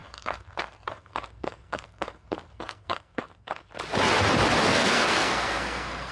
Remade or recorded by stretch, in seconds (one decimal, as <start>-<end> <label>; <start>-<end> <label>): 0.0-3.7 remade; 3.7-4.7 recorded; 4.7-6.1 remade